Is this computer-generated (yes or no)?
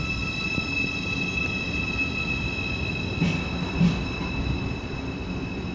no